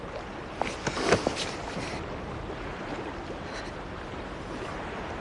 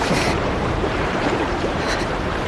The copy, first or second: second